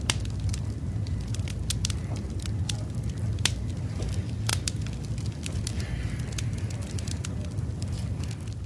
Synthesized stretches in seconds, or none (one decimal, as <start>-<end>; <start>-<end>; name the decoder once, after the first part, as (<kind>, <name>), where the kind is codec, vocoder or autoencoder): 0.0-8.7 (vocoder, BigVGAN v2)